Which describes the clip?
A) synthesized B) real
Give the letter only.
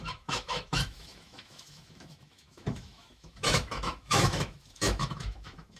A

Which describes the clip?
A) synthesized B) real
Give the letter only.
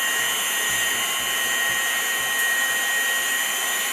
B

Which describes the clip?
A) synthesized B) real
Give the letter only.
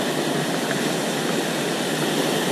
B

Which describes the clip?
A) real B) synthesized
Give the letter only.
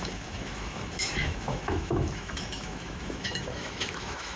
B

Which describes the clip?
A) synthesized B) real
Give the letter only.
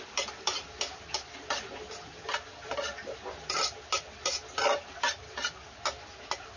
B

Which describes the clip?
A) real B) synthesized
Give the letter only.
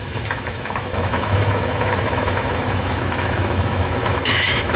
B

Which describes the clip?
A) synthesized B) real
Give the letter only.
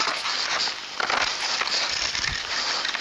B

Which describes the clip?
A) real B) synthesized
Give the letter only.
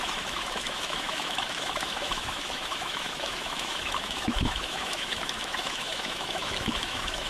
B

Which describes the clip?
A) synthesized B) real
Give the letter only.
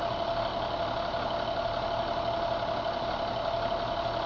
B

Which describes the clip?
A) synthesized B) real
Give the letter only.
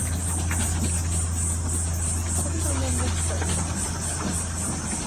B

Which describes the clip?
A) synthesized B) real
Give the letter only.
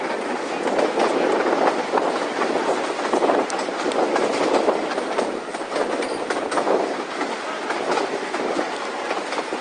B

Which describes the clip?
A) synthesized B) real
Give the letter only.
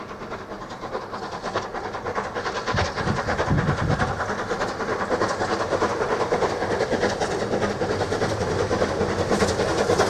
B